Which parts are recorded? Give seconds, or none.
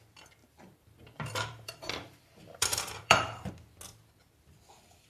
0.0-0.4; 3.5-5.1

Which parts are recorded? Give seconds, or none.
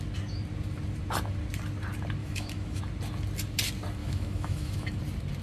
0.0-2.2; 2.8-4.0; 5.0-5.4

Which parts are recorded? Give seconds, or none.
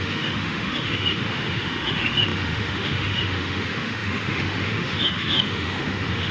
none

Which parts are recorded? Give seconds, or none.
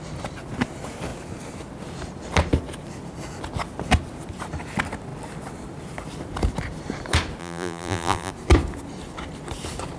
0.0-7.4; 8.3-10.0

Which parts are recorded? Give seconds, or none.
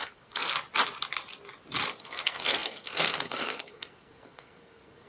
0.5-2.0